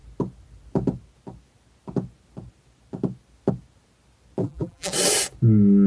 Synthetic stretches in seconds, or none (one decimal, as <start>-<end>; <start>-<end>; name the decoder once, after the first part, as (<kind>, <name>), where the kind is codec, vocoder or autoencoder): 4.4-4.9 (vocoder, BigVGAN v2)